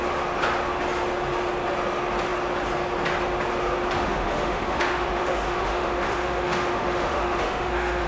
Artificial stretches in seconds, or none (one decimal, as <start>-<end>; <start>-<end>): 4.0-8.1